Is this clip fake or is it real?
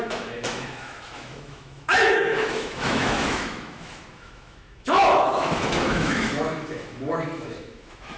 fake